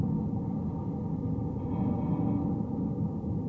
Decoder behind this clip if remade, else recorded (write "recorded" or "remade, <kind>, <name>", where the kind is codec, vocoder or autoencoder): recorded